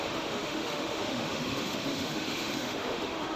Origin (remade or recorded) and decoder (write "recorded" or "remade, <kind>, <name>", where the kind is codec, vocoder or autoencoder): remade, autoencoder, DAC-VAE